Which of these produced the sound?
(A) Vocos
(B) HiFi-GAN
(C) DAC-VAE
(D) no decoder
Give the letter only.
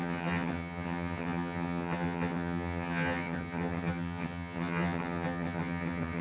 B